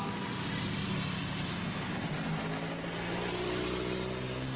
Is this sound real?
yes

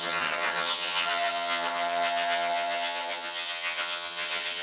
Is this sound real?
no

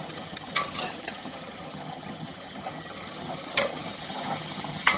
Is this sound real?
no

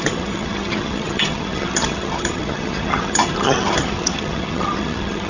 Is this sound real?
no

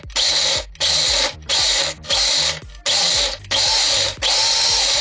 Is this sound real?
yes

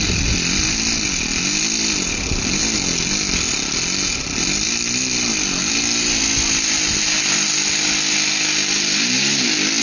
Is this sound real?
yes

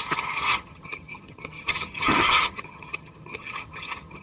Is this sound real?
no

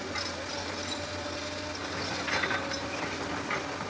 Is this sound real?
yes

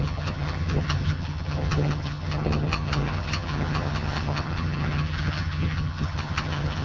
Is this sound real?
no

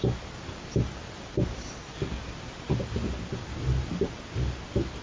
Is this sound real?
yes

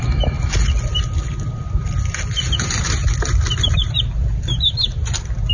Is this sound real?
yes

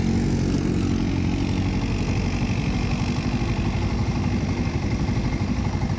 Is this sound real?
yes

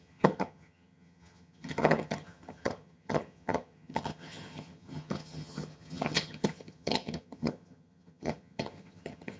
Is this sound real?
no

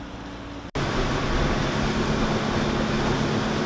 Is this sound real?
yes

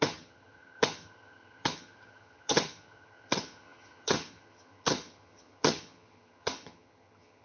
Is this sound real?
no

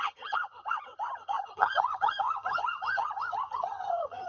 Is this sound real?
no